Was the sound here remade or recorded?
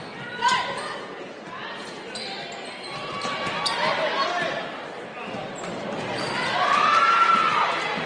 recorded